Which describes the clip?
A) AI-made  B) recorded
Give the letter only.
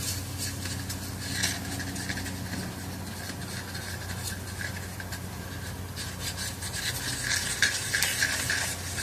B